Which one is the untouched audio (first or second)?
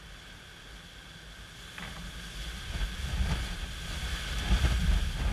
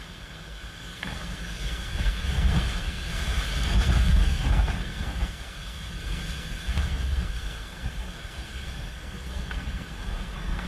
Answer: first